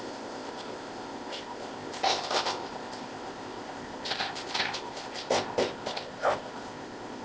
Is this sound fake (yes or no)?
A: yes